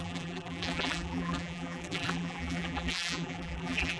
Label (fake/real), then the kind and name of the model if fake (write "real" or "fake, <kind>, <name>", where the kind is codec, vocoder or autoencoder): fake, vocoder, BigVGAN v2